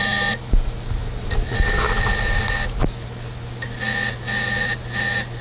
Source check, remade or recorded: recorded